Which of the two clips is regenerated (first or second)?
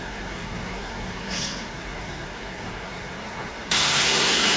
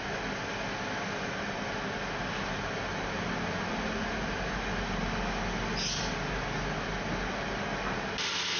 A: first